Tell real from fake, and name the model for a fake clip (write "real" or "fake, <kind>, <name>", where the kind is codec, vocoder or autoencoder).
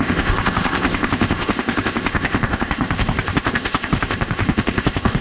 fake, codec, ZipCodec